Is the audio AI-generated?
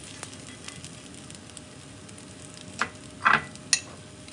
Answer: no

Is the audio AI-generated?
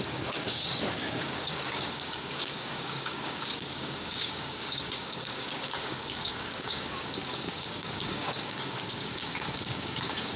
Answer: yes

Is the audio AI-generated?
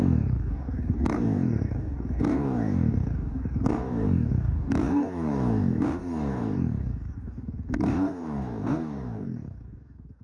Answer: yes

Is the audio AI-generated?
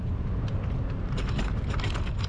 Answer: no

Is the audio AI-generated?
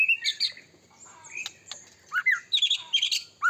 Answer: no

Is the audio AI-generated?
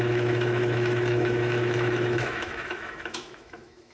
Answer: yes